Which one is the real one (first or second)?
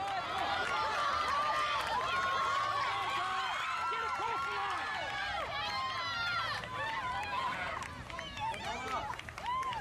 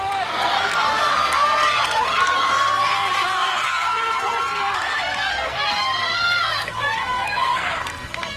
first